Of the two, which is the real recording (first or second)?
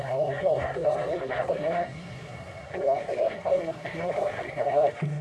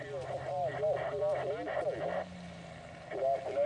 second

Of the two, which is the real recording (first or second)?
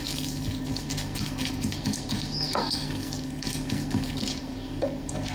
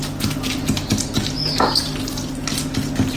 second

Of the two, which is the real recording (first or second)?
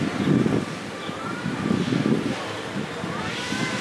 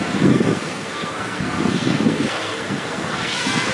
first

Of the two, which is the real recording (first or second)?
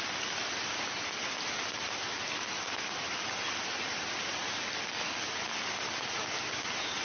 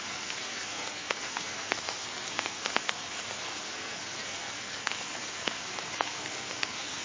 first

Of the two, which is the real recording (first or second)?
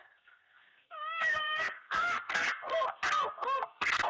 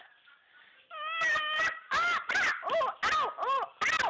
second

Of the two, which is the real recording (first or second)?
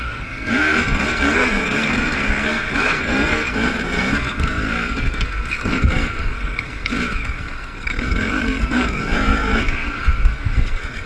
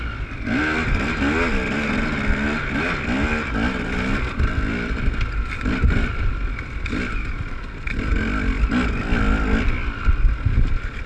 second